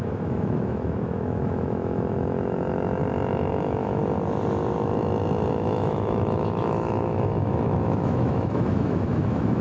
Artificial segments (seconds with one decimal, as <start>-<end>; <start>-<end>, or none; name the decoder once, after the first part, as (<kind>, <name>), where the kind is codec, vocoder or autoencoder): 0.0-3.0 (autoencoder, DAC-VAE); 3.5-4.0; 5.5-9.6